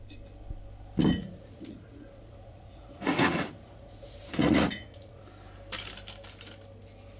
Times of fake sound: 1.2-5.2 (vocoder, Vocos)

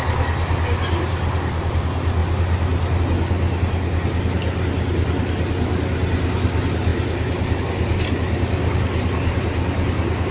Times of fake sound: none

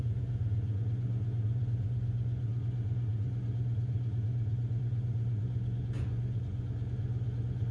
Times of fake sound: 0.0-7.7 (vocoder, Vocos)